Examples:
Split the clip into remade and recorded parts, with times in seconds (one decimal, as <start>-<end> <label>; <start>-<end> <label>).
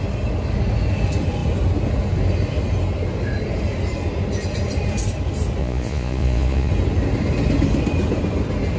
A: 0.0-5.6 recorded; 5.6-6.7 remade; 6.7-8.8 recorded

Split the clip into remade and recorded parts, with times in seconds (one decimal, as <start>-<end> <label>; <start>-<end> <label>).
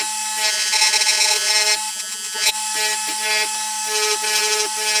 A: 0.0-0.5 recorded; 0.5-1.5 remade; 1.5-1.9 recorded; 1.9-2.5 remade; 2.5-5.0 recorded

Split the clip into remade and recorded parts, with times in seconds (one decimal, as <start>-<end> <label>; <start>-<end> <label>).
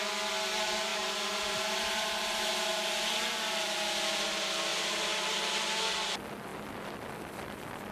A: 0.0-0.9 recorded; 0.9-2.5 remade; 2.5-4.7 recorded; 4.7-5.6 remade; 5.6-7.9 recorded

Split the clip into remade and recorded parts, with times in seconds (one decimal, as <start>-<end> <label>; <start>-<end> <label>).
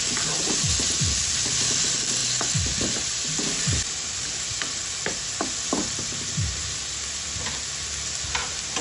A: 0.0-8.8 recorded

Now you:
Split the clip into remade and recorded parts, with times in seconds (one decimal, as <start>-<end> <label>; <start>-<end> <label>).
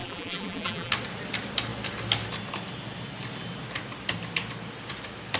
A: 0.0-0.9 remade; 0.9-5.4 recorded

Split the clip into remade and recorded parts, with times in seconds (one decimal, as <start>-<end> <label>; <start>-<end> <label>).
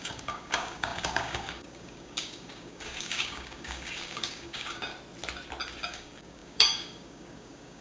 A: 0.0-4.9 remade; 4.9-5.8 recorded; 5.8-7.8 remade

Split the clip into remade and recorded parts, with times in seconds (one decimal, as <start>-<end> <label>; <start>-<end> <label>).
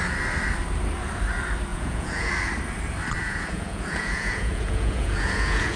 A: 0.0-1.7 recorded; 1.7-2.3 remade; 2.3-3.2 recorded; 3.2-5.8 remade